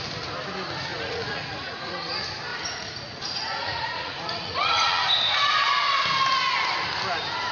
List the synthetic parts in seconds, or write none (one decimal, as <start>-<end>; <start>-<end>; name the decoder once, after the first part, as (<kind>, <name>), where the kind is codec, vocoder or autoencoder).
0.9-2.1 (vocoder, Vocos); 2.5-5.1